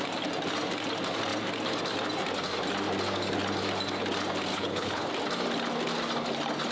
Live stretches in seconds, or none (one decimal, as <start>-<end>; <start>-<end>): 0.0-4.5; 5.1-6.7